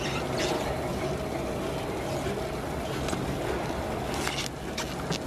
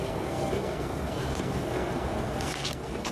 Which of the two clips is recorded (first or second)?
first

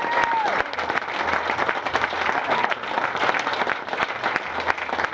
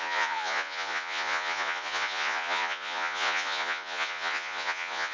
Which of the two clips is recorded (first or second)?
first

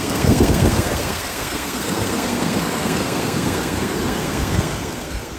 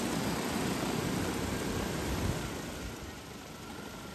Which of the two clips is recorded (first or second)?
second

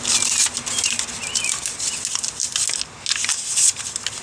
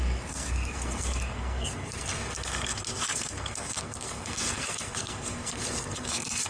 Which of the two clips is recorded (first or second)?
first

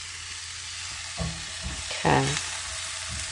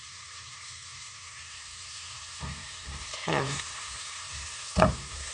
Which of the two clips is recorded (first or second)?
first